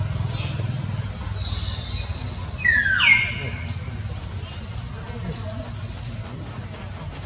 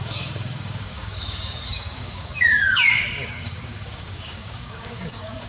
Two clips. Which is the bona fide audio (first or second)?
first